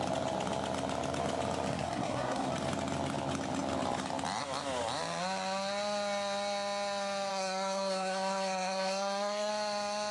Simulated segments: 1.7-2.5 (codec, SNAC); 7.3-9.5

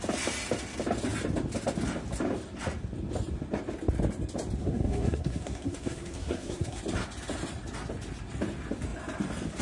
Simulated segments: 4.6-6.8 (codec, SNAC)

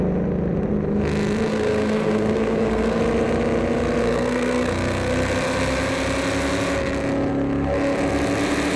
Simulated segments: 1.5-3.0 (codec, SNAC); 4.0-4.7

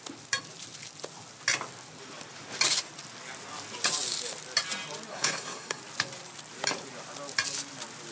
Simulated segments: 5.1-5.8 (codec, SNAC)

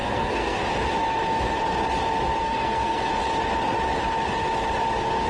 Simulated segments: 0.0-0.6 (codec, SNAC); 2.4-3.0

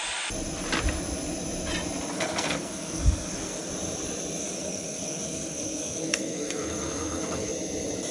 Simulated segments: 2.1-3.7 (codec, SNAC); 4.4-7.5